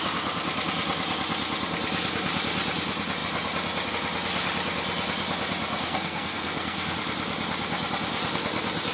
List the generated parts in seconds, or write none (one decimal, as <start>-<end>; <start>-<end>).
5.8-7.0